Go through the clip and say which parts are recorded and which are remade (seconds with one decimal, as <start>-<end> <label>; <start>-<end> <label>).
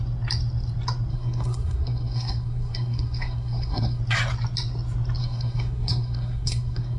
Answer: 0.0-1.1 recorded; 1.1-4.0 remade; 4.0-5.2 recorded; 5.2-7.0 remade